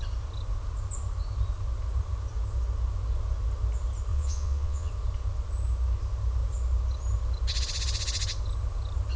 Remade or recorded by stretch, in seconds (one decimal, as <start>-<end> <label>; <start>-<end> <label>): 0.0-4.1 recorded; 4.1-4.9 remade; 4.9-9.2 recorded